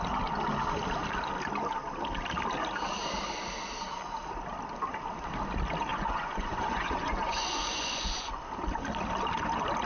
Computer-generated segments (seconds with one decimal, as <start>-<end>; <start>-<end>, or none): 5.9-8.4